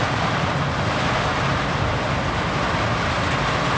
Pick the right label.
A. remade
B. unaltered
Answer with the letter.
B